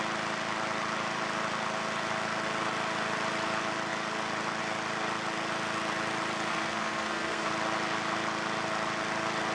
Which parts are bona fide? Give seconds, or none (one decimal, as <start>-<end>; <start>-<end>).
0.0-6.5; 7.5-9.5